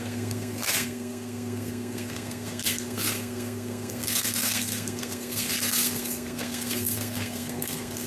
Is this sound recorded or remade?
remade